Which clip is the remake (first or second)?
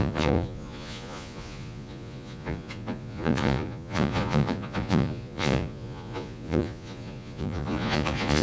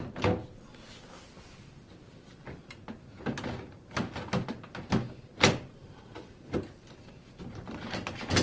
first